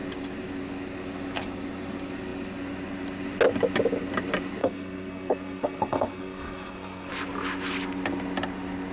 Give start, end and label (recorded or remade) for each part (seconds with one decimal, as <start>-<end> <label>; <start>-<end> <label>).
0.0-4.6 recorded; 4.6-7.1 remade; 7.1-8.9 recorded